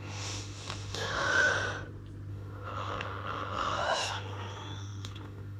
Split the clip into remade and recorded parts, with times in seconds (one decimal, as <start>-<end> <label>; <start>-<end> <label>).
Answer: 0.0-1.5 remade; 1.5-2.3 recorded; 2.3-5.6 remade